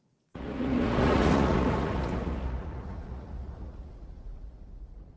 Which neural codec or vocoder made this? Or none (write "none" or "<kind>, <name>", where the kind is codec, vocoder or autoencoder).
vocoder, Vocos